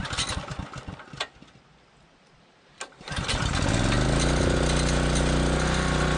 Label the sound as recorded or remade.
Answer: recorded